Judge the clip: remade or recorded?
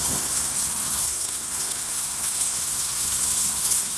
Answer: remade